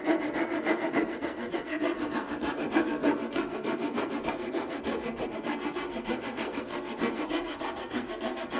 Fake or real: fake